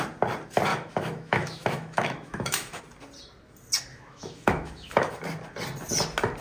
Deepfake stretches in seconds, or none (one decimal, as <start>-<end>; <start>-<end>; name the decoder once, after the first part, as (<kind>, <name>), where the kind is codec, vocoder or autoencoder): 0.7-2.8 (autoencoder, DAC-VAE); 3.9-5.1

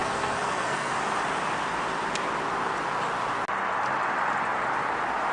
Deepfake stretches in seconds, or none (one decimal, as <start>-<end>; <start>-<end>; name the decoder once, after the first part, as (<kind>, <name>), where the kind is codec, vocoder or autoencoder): 0.0-0.9 (codec, SNAC)

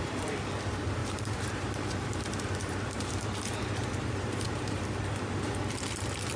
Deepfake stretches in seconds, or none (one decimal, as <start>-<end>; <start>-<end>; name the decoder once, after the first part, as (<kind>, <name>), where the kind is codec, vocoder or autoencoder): 1.0-4.8 (vocoder, BigVGAN v2)

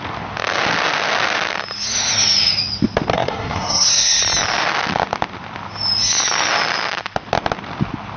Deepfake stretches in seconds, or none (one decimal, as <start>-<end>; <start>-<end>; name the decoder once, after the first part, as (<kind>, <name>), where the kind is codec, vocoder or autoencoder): 3.1-4.2 (codec, SNAC)